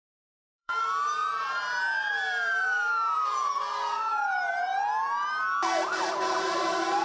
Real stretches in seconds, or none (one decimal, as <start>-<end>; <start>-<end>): 0.7-2.1; 4.7-6.4